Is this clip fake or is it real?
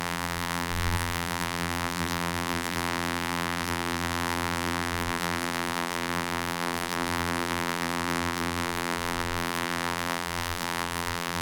fake